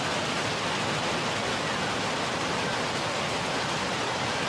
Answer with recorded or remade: recorded